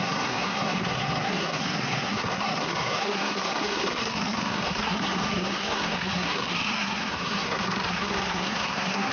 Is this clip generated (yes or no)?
yes